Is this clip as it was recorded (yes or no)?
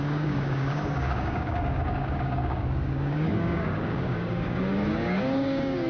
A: no